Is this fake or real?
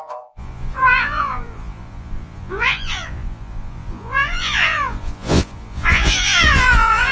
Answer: fake